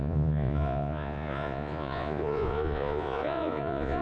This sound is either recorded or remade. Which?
remade